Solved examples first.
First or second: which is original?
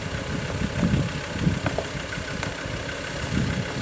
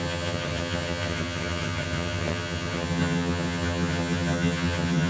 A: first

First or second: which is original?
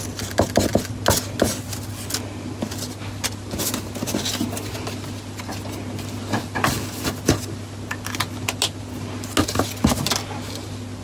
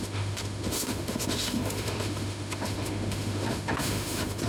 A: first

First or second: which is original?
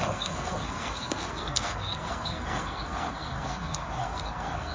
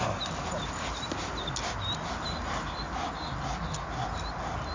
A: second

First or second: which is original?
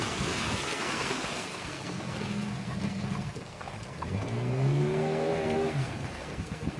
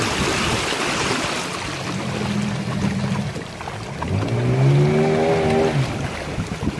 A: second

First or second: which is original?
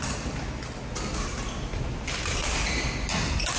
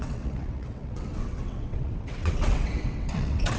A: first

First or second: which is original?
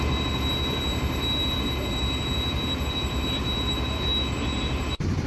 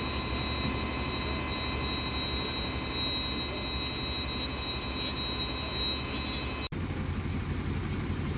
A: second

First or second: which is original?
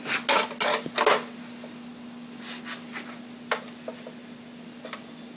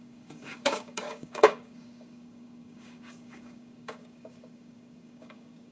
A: first